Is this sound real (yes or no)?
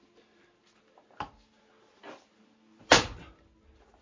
yes